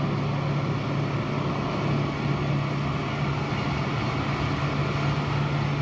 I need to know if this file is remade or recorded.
recorded